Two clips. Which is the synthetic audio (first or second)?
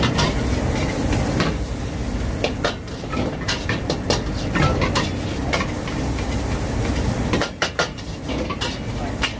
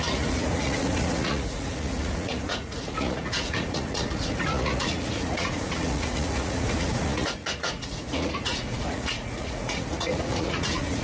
second